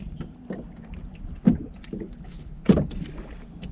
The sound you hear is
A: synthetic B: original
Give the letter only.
B